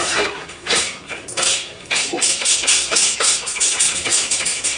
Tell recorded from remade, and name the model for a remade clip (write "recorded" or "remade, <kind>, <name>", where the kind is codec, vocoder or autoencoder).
remade, codec, SNAC